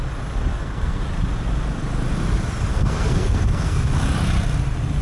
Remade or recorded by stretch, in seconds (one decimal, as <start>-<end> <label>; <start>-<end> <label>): 0.0-0.5 recorded; 0.5-1.0 remade; 1.0-2.7 recorded; 2.7-3.9 remade; 3.9-5.0 recorded